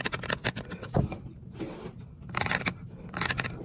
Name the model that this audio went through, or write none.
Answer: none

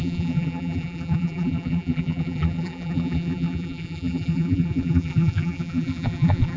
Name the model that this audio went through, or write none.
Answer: vocoder, BigVGAN v2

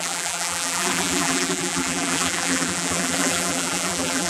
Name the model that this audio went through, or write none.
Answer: vocoder, BigVGAN v2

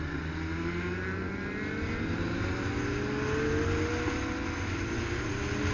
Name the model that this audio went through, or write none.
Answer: none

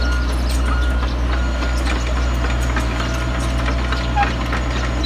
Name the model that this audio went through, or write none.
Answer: none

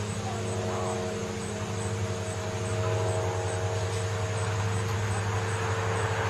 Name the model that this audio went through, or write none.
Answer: none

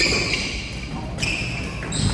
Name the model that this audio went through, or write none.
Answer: none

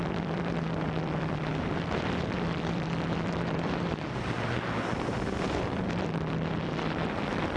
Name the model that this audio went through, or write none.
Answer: vocoder, BigVGAN v2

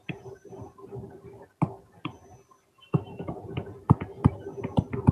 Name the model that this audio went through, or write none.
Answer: none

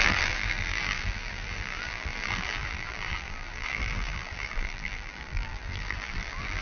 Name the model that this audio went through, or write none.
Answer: vocoder, BigVGAN v2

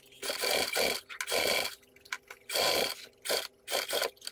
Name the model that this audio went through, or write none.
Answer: none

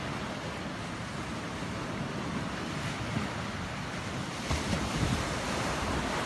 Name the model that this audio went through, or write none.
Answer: none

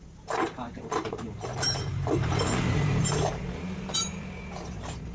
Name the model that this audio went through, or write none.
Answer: vocoder, BigVGAN v2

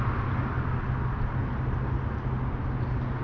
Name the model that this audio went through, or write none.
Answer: none